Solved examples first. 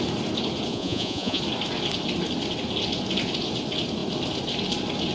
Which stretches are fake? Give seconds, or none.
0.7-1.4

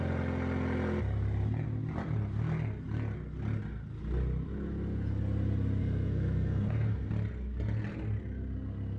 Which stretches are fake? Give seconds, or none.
5.8-7.1